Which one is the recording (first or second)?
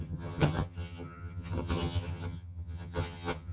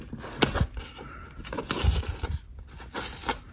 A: second